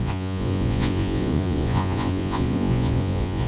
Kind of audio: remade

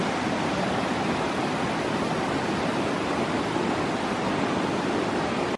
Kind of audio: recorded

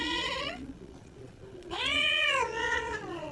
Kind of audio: remade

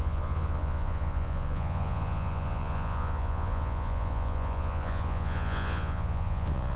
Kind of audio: remade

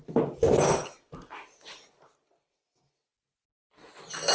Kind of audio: recorded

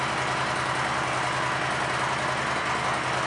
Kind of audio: recorded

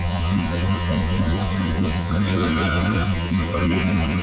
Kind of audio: remade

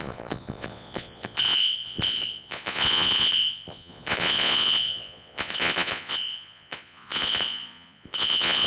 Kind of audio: remade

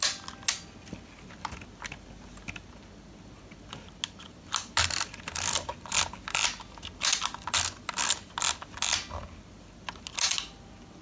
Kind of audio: recorded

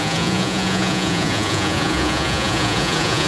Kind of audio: remade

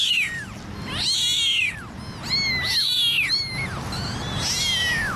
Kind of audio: recorded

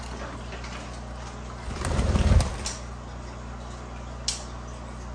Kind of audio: recorded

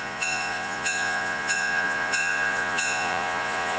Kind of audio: remade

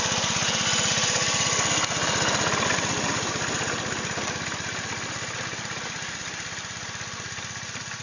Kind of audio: recorded